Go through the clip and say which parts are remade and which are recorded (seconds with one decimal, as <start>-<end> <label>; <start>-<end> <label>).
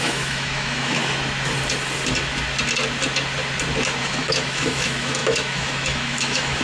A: 0.0-1.0 remade; 1.0-4.0 recorded; 4.0-6.6 remade